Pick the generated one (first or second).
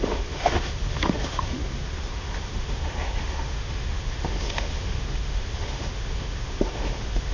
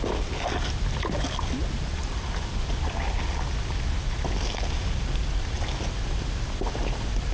first